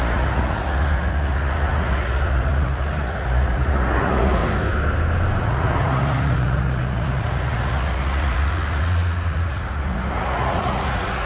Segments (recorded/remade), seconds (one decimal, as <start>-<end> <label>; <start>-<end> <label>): 0.0-4.4 remade; 4.4-5.4 recorded; 5.4-11.3 remade